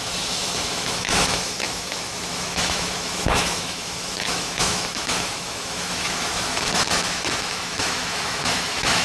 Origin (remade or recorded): remade